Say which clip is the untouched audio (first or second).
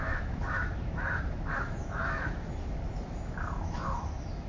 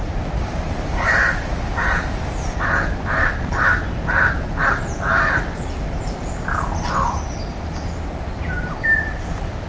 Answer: second